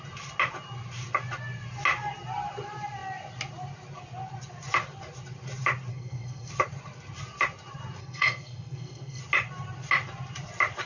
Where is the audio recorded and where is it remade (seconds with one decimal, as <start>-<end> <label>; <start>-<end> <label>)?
0.0-5.9 recorded; 5.9-6.5 remade; 6.5-8.0 recorded; 8.0-9.2 remade; 9.2-10.9 recorded